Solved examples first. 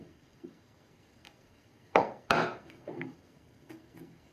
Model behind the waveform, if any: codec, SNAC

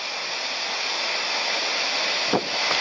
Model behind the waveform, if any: none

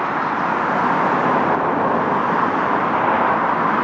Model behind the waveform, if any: none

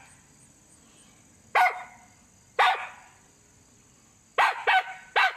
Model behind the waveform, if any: none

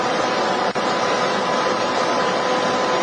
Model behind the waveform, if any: none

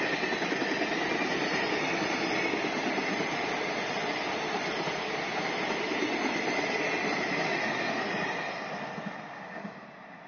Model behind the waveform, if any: none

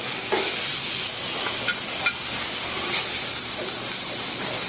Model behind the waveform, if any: none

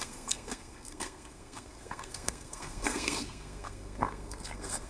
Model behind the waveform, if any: codec, SNAC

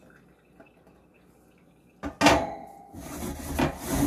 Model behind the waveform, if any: none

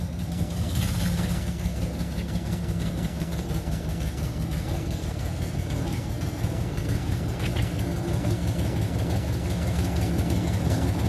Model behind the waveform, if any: codec, SNAC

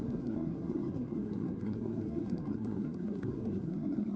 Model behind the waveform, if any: codec, SNAC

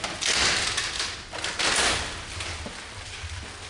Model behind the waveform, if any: none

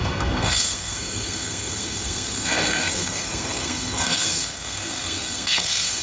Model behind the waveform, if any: codec, SNAC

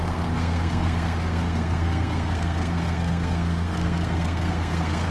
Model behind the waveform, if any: codec, SNAC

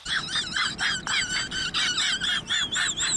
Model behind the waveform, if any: none